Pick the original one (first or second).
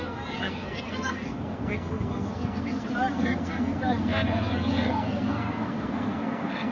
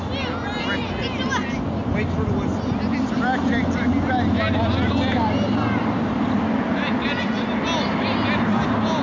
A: second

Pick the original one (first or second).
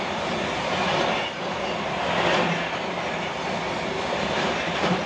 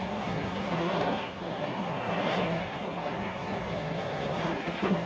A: first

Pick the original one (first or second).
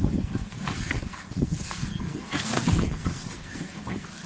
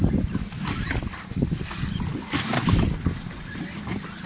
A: second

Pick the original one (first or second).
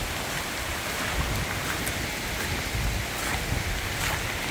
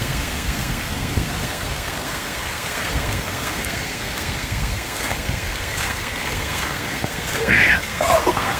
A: first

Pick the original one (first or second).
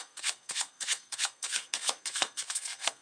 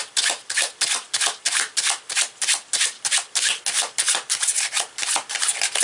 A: second